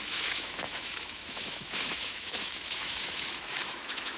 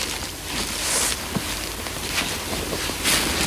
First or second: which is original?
second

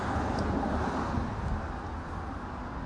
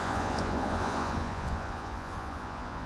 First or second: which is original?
first